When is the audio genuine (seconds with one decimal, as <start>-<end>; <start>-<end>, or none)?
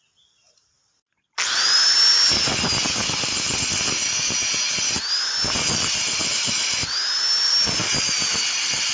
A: 0.0-8.9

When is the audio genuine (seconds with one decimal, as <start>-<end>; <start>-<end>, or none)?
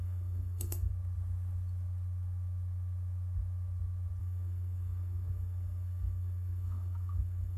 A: 0.9-4.2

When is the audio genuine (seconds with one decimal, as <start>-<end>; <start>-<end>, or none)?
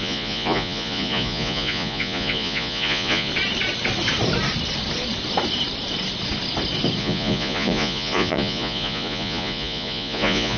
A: 3.3-7.0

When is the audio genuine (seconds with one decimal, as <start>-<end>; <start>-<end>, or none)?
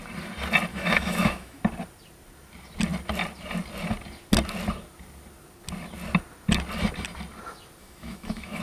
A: 0.0-0.7; 1.6-7.8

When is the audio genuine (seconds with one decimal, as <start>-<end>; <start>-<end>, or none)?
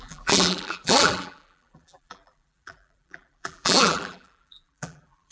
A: none